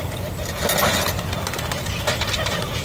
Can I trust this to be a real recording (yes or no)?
yes